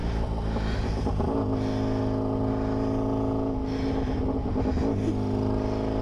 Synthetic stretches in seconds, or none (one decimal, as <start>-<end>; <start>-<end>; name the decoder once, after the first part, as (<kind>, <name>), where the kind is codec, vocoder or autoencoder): none